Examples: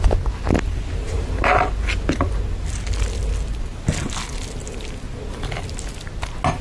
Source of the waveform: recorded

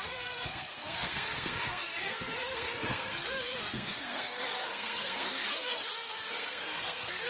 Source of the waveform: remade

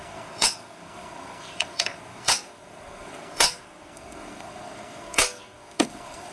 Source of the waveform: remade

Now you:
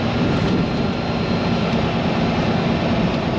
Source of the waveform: recorded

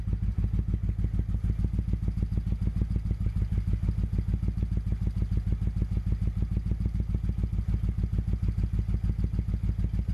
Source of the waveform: recorded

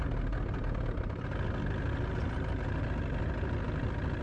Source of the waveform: recorded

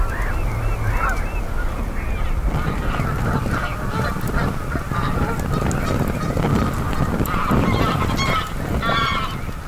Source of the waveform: recorded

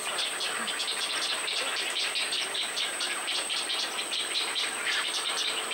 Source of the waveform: recorded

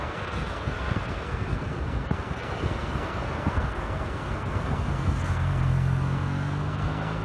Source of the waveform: remade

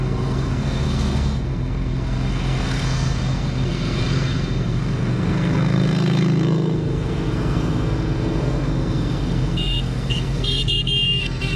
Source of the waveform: remade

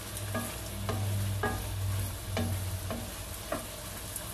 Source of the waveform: recorded